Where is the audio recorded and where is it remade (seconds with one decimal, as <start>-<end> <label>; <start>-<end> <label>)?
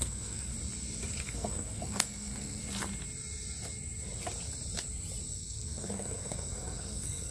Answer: 0.0-0.5 remade; 0.5-1.2 recorded; 1.2-2.6 remade; 2.6-5.3 recorded; 5.3-7.3 remade